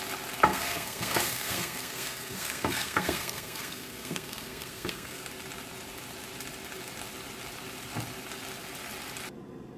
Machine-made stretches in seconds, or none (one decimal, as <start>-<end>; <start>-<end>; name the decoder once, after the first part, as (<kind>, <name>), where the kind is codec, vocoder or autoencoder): 0.5-5.2 (codec, SNAC)